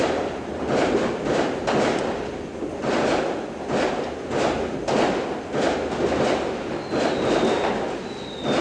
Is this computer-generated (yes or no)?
no